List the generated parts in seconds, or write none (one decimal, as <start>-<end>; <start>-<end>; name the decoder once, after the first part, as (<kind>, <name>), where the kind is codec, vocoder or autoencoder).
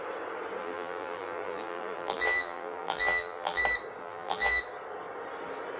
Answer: 0.6-3.6 (vocoder, BigVGAN v2); 4.0-4.6